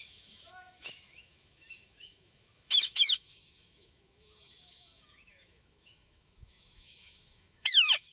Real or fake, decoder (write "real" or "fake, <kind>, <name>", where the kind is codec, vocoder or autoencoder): fake, autoencoder, DAC-VAE